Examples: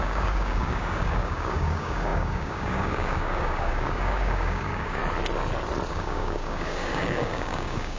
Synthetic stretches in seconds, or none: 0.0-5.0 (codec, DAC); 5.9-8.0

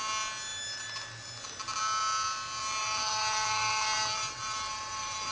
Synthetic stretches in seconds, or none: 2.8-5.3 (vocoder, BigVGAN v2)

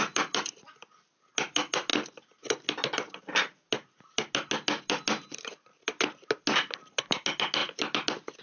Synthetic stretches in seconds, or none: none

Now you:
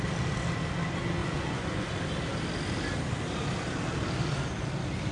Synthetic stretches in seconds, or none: 1.2-1.9 (vocoder, Vocos)

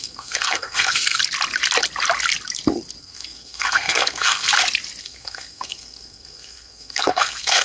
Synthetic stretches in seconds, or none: 0.0-1.2 (codec, SNAC); 3.0-4.5; 5.0-7.6